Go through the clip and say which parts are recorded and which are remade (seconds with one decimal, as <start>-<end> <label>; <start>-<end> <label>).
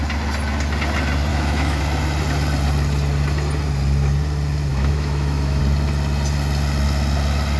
0.0-1.3 recorded; 1.3-1.8 remade; 1.8-4.7 recorded; 4.7-5.6 remade; 5.6-7.6 recorded